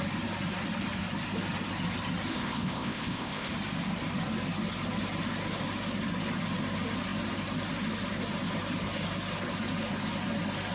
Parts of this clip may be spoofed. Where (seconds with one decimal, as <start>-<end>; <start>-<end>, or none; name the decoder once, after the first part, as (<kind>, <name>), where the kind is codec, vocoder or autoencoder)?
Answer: 2.3-3.5 (codec, ZipCodec)